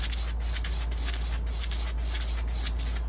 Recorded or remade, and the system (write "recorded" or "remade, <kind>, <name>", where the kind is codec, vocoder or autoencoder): recorded